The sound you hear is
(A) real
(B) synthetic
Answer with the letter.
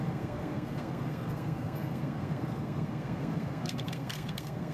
B